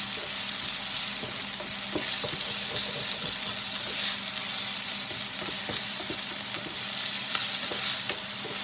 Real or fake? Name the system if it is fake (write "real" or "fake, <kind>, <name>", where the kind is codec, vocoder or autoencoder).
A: real